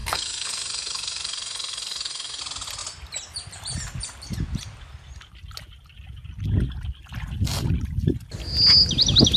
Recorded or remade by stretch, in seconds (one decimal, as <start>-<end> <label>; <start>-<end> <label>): 0.0-2.4 remade; 2.4-9.4 recorded